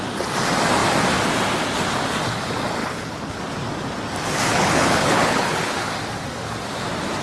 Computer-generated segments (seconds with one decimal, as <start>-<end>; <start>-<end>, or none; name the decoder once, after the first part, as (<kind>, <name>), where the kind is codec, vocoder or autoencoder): 2.8-3.4 (codec, HILCodec); 4.5-5.9